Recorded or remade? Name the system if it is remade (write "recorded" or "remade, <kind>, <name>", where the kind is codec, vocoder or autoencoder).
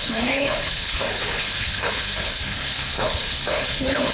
remade, codec, HILCodec